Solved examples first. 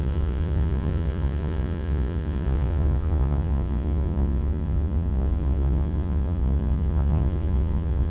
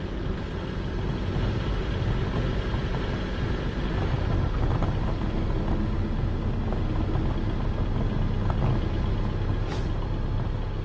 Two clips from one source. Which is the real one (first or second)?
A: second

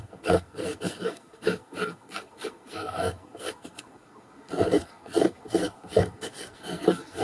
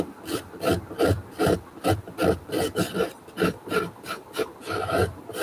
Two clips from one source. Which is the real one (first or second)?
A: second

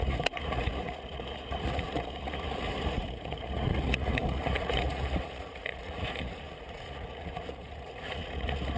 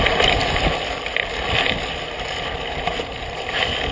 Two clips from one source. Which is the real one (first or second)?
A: second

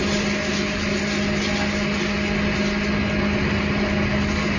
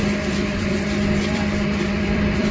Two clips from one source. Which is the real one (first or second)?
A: first